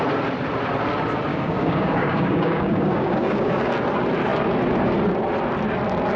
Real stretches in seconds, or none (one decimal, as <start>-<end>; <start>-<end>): 0.0-1.3; 3.7-6.2